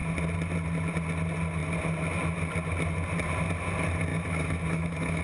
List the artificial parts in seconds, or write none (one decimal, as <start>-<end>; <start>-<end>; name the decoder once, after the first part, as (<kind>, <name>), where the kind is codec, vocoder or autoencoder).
4.1-5.2 (autoencoder, DAC-VAE)